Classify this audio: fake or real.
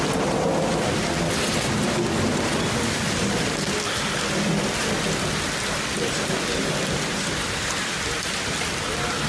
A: real